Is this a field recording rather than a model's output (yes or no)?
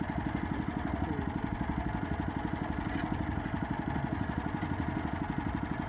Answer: yes